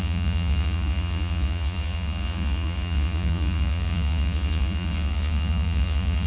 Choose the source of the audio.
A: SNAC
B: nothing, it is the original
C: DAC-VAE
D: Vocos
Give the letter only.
D